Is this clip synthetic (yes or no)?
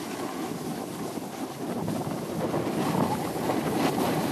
no